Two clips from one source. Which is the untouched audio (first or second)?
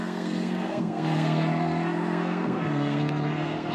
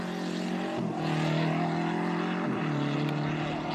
second